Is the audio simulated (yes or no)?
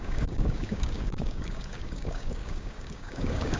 yes